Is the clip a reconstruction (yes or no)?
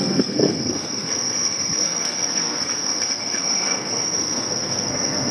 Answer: yes